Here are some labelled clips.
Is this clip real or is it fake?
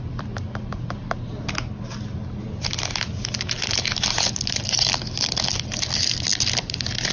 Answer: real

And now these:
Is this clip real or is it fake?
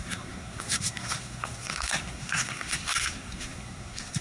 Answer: fake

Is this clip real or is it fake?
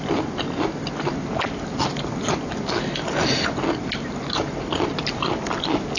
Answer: real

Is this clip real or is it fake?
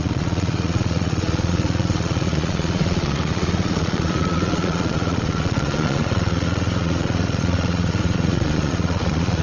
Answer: fake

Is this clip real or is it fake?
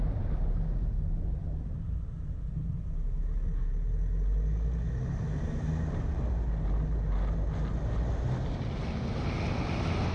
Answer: real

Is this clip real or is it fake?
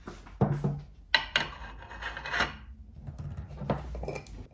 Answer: real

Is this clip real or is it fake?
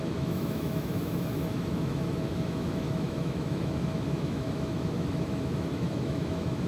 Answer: fake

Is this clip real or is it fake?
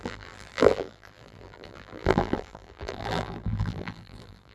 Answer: fake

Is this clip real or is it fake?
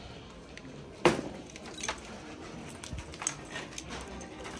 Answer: real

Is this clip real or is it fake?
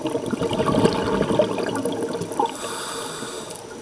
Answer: real